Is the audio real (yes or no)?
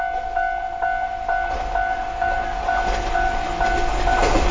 yes